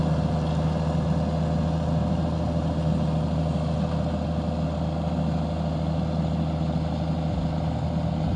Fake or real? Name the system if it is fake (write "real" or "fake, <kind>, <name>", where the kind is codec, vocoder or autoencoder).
real